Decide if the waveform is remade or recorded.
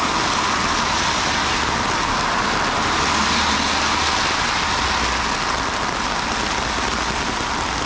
recorded